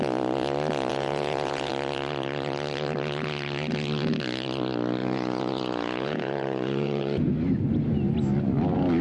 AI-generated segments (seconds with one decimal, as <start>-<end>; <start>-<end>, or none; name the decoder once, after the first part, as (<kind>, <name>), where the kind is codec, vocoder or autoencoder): 0.9-1.7 (vocoder, Vocos); 5.0-7.3